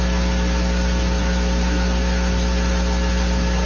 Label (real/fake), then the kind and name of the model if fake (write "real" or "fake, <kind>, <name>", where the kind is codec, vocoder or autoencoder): real